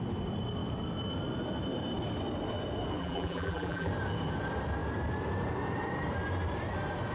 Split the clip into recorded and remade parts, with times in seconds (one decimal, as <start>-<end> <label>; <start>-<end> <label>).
0.0-3.0 recorded; 3.0-3.9 remade; 3.9-7.1 recorded